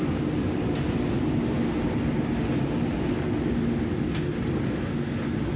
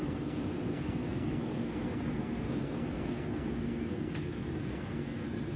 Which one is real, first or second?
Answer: first